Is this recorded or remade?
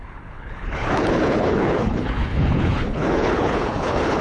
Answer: remade